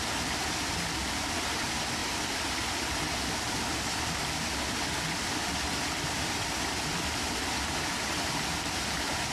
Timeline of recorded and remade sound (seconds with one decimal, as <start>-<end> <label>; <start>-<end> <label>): 0.0-9.3 recorded